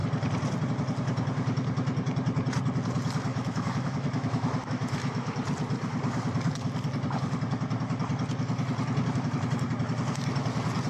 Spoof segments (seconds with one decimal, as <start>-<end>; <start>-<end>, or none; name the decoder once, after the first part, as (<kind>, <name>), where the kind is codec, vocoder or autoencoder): 3.3-5.3 (autoencoder, DAC-VAE)